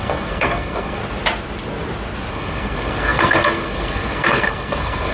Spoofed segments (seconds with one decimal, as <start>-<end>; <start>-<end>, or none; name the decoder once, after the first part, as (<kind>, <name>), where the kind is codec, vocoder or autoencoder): 0.0-1.0 (codec, SNAC); 2.3-5.1